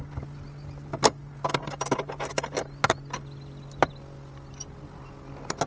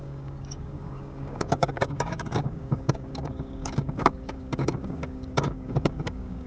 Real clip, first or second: first